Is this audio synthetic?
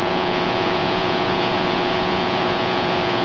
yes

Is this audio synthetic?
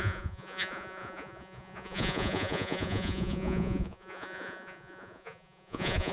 yes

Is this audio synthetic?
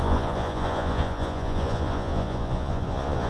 yes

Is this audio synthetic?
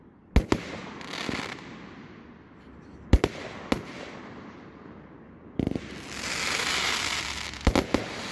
no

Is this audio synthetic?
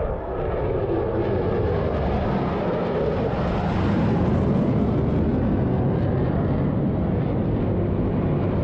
no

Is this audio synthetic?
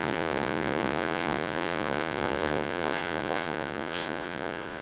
yes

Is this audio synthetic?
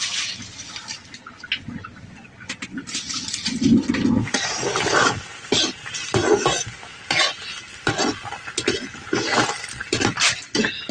no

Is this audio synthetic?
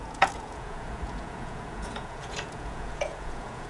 yes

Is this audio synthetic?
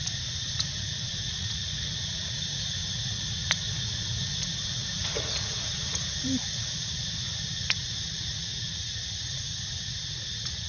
yes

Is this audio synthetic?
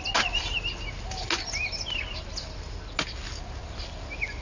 no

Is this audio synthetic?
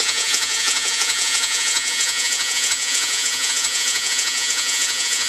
yes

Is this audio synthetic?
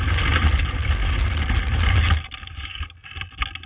no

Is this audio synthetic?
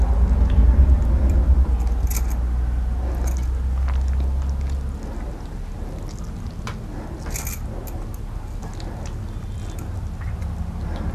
no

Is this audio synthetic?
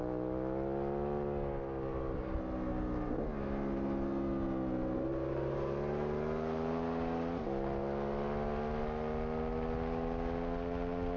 no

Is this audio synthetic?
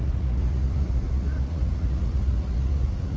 yes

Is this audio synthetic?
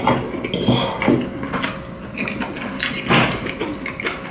no